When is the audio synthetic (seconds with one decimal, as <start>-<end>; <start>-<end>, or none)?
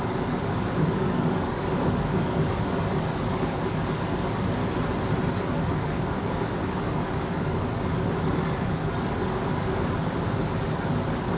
0.0-4.6; 5.3-11.4